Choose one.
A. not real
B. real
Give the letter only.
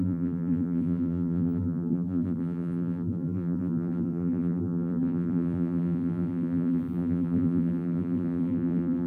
A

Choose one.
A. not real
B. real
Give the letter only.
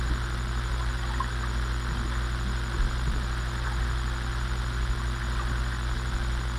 B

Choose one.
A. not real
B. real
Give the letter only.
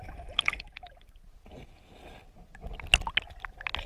B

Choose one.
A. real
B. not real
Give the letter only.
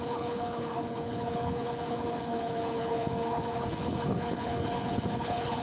B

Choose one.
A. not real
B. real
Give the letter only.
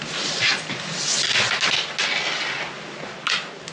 B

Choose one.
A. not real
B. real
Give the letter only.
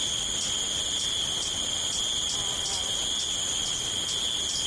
B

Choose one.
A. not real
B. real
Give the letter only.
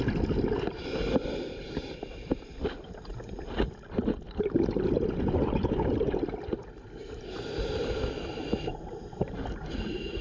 B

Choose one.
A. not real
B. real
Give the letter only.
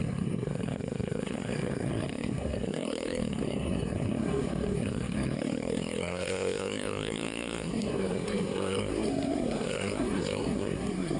A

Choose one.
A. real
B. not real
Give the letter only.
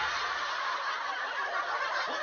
A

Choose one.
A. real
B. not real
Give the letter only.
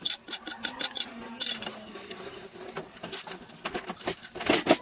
A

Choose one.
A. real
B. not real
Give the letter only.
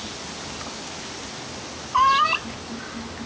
A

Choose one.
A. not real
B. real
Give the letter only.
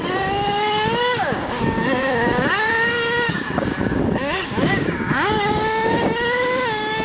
A